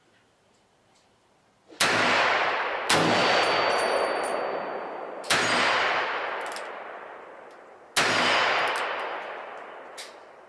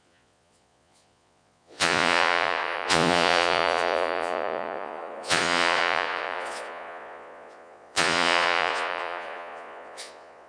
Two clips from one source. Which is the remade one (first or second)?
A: second